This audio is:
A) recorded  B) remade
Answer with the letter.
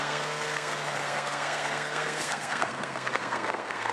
B